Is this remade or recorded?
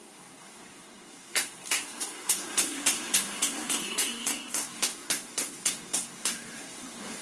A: remade